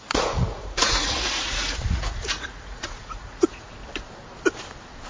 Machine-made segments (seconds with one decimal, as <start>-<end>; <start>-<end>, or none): 0.0-3.8